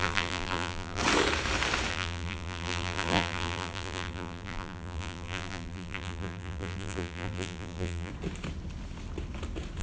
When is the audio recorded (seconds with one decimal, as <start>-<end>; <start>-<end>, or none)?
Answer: 1.0-1.9; 8.1-9.8